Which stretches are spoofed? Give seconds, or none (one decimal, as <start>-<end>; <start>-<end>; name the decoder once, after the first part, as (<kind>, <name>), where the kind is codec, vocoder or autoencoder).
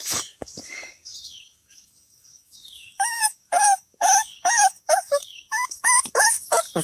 0.0-6.8 (codec, DAC)